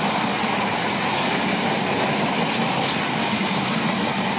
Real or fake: real